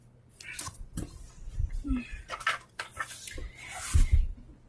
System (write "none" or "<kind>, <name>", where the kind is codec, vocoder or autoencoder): none